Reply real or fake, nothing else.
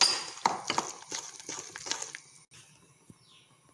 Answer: real